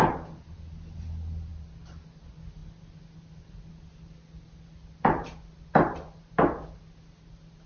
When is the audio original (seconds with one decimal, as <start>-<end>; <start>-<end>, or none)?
0.0-7.7